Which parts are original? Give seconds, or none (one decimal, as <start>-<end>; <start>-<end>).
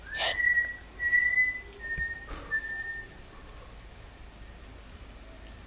0.0-5.7